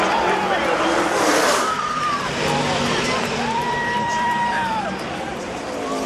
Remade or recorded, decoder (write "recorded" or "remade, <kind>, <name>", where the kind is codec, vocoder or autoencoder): remade, vocoder, BigVGAN v2